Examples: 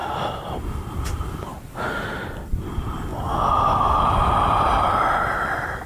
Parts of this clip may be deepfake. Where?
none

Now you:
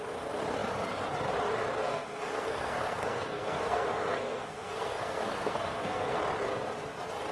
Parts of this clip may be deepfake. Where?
1.8-6.2 (codec, SNAC)

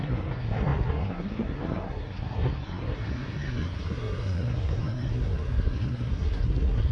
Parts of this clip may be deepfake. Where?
0.0-6.9 (codec, SNAC)

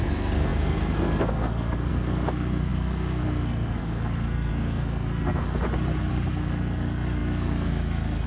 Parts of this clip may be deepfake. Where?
0.0-5.6 (codec, SNAC); 6.3-8.3

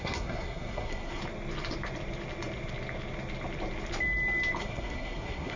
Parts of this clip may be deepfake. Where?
0.0-1.2 (codec, SNAC); 4.6-5.6

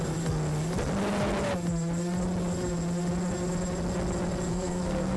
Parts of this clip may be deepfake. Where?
4.5-5.2 (codec, SNAC)

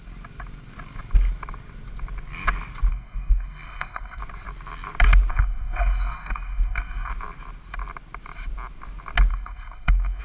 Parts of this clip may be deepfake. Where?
2.9-4.2 (codec, SNAC); 5.3-7.1; 9.3-10.2

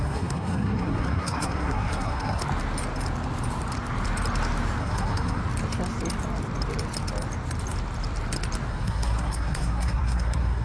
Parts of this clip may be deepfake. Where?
0.0-2.4 (codec, SNAC); 4.8-5.4; 8.7-10.6